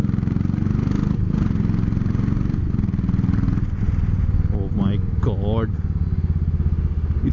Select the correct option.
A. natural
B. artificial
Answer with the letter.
A